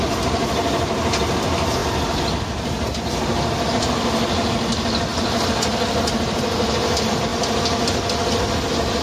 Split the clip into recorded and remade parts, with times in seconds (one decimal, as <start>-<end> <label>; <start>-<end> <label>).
0.0-9.0 recorded